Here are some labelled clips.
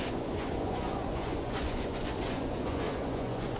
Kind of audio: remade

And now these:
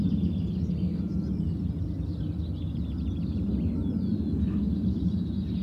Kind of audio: recorded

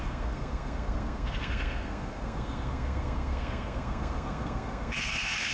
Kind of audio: remade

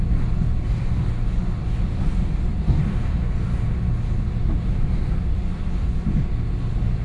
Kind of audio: recorded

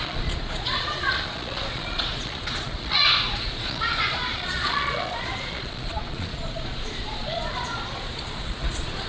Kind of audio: remade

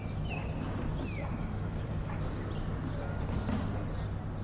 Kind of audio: recorded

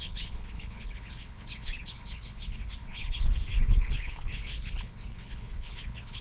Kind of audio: remade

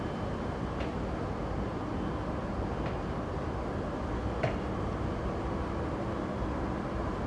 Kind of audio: recorded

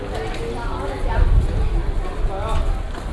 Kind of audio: recorded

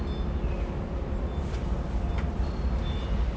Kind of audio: recorded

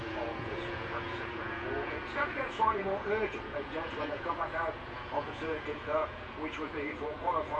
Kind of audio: remade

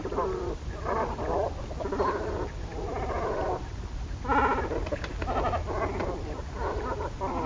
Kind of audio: recorded